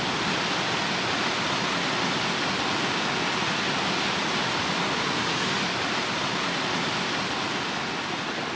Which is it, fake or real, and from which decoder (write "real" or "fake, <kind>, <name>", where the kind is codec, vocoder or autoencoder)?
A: real